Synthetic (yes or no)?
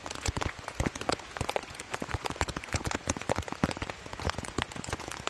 yes